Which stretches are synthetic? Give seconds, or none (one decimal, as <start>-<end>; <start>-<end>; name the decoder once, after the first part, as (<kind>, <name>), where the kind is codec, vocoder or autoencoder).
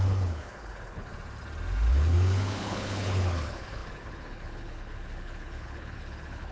0.0-1.1 (codec, HILCodec); 1.9-6.5